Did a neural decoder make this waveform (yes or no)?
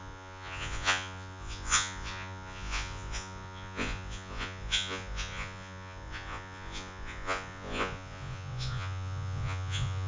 yes